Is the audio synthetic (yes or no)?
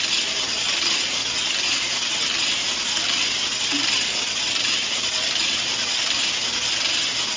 no